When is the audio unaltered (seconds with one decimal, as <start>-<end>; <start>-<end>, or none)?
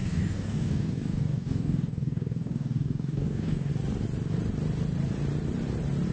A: 3.7-6.1